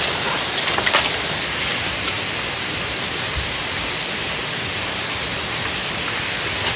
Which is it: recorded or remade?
recorded